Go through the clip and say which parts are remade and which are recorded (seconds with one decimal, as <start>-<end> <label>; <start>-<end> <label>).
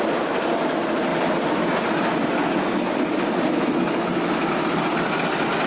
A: 0.0-5.7 recorded